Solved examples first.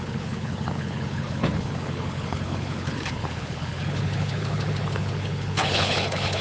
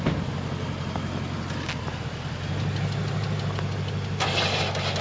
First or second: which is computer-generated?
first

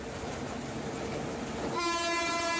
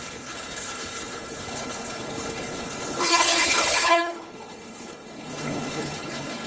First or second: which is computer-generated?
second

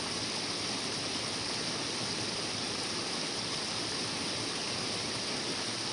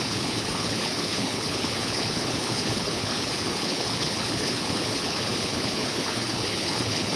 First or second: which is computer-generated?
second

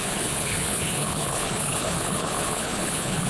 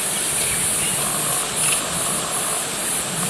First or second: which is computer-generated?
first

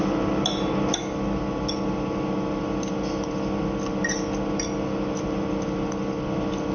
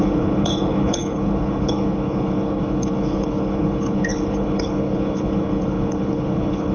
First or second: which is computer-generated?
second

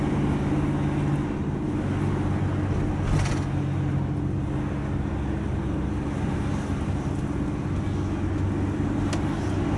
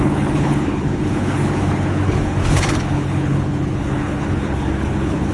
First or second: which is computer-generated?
second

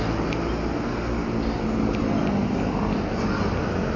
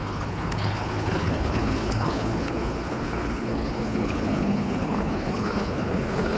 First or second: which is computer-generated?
second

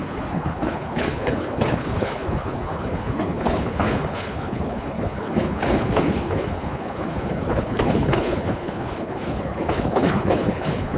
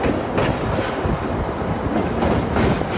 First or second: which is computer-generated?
first